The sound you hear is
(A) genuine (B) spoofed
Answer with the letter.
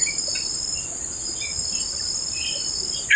A